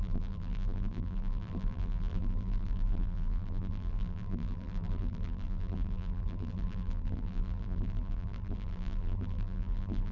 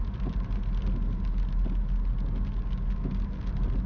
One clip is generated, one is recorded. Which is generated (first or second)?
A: first